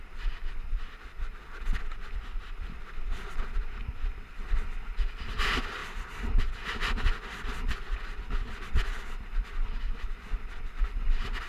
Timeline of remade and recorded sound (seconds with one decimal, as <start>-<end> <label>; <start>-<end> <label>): 0.0-11.5 recorded